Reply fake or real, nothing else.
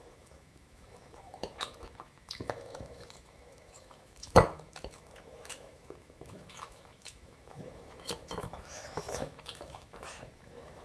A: fake